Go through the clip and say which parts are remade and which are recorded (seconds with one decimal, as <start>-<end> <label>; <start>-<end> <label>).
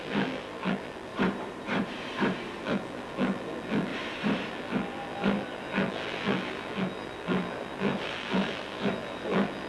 0.0-1.1 remade; 1.1-2.6 recorded; 2.6-3.9 remade; 3.9-4.5 recorded; 4.5-9.7 remade